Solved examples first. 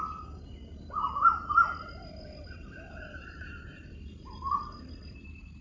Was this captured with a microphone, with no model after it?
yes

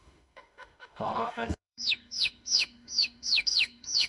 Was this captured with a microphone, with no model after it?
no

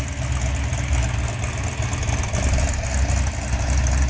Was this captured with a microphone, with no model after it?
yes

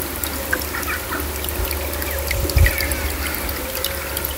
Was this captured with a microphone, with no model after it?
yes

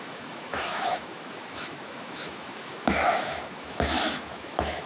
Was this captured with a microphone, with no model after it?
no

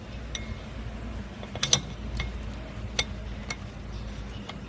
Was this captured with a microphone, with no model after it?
yes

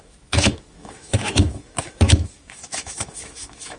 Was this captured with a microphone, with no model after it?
no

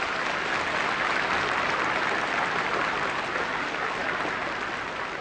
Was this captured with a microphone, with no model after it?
yes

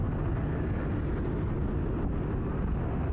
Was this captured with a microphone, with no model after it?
yes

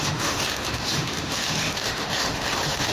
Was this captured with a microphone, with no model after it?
no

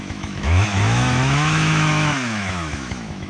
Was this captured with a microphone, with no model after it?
no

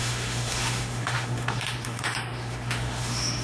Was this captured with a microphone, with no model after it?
no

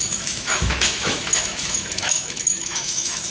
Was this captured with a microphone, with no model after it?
no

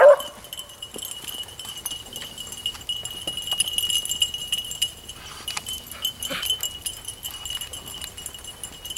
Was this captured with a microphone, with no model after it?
yes